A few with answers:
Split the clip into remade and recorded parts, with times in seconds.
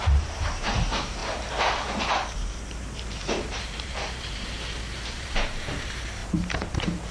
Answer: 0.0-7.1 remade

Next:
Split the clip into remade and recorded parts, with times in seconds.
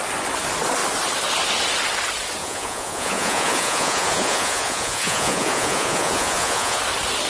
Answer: 0.0-2.4 recorded; 2.4-6.8 remade; 6.8-7.3 recorded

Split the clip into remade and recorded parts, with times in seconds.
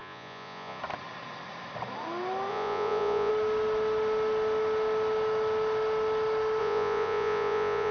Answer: 0.0-0.8 remade; 0.8-2.5 recorded; 2.5-3.3 remade; 3.3-6.6 recorded; 6.6-7.9 remade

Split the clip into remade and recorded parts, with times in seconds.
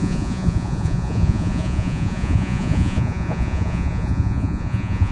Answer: 0.0-5.1 remade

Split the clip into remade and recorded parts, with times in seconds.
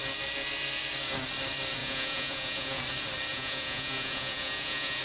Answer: 0.0-1.8 recorded; 1.8-2.8 remade; 2.8-3.3 recorded; 3.3-5.0 remade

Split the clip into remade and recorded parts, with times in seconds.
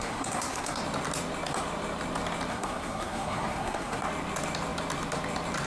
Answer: 0.0-0.8 remade; 0.8-2.5 recorded; 2.5-4.0 remade; 4.0-5.7 recorded